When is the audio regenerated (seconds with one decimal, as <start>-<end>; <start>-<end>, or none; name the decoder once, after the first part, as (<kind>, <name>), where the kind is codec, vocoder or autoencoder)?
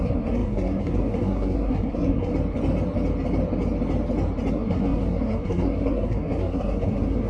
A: 0.0-2.3 (codec, SNAC); 4.5-7.3